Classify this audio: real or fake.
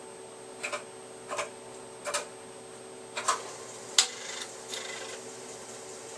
real